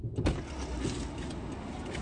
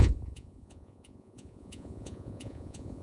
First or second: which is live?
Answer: first